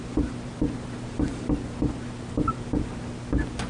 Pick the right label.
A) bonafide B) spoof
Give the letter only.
A